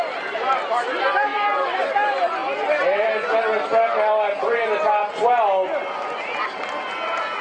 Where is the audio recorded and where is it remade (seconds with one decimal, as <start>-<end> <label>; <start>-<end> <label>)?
0.0-1.3 remade; 1.3-1.8 recorded; 1.8-5.0 remade; 5.0-7.4 recorded